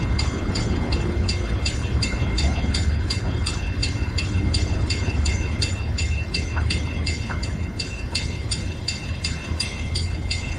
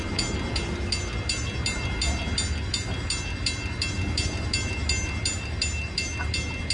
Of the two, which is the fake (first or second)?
first